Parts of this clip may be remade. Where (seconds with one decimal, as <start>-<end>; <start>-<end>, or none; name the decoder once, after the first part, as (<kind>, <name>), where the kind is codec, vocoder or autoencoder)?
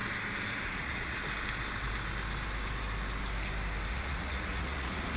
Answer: 0.6-1.2 (vocoder, Vocos); 3.9-5.2